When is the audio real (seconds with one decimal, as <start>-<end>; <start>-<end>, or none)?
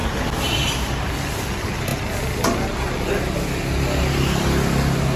0.0-5.2